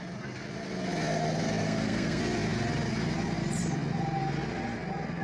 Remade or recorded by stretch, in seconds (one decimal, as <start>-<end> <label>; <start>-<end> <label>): 0.0-1.6 recorded; 1.6-2.2 remade; 2.2-5.2 recorded